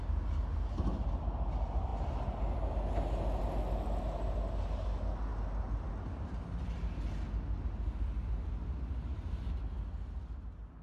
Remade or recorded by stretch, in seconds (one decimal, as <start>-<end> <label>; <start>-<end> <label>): 0.0-10.8 recorded